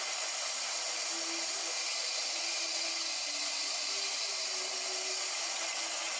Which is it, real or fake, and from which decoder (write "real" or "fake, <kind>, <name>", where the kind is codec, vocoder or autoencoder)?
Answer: real